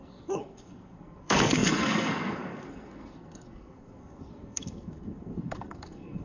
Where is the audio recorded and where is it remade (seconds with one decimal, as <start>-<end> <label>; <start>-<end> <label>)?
0.0-6.2 remade